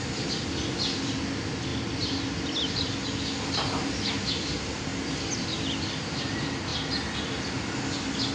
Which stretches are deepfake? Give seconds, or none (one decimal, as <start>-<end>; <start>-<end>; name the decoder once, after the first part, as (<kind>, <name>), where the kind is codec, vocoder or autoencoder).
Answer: none